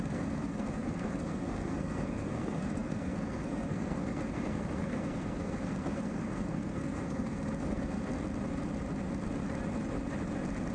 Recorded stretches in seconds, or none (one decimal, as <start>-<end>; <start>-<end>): 8.1-10.7